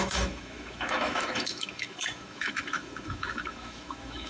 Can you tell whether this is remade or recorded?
remade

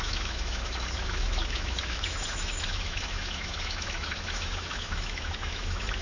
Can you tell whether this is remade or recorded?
remade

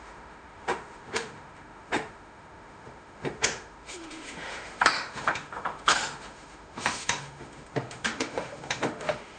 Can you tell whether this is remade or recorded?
remade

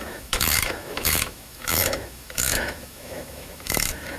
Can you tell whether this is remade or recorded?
remade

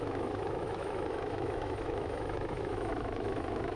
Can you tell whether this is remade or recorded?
remade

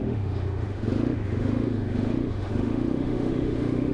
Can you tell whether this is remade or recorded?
remade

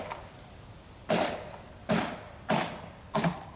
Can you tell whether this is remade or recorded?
recorded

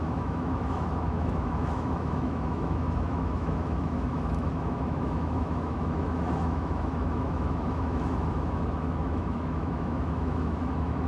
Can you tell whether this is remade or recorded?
remade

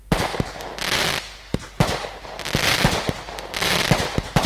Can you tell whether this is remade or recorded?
recorded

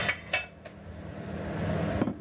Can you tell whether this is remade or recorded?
recorded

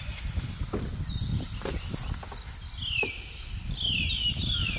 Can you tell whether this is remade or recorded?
recorded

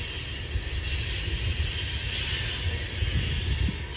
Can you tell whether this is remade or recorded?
recorded